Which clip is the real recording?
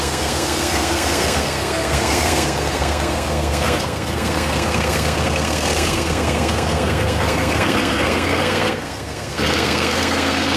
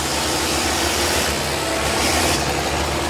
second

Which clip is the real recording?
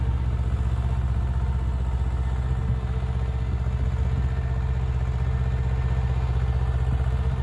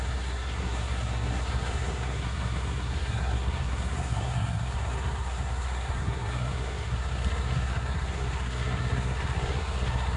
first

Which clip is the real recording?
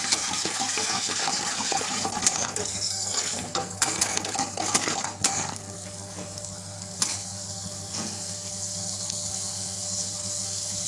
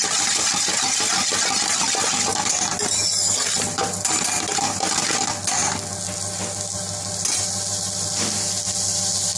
second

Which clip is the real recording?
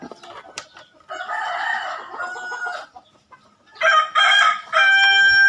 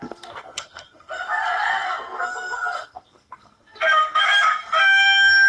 first